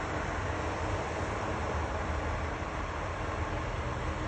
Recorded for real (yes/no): yes